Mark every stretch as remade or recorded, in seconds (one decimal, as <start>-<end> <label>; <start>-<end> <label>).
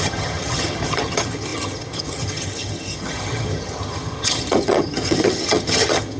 0.0-6.2 remade